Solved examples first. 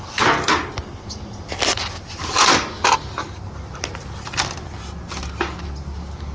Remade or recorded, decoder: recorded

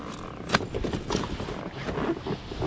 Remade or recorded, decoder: recorded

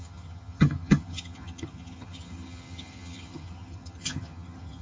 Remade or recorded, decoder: remade, vocoder, HiFi-GAN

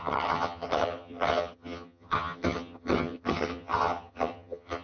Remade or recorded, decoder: remade, vocoder, HiFi-GAN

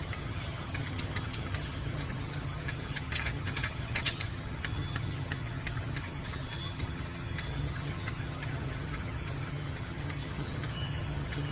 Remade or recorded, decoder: remade, vocoder, HiFi-GAN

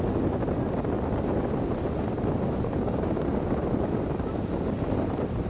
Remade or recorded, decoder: recorded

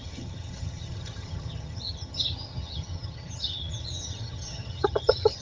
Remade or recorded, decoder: remade, vocoder, HiFi-GAN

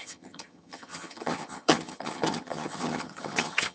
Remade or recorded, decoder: remade, vocoder, HiFi-GAN